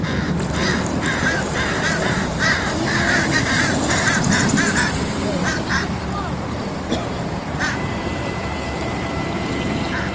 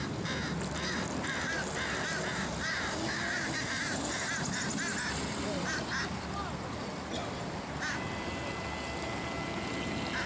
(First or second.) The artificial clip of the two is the first